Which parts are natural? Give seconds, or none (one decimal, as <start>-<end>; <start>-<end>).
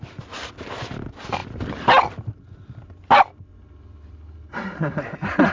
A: 0.0-5.5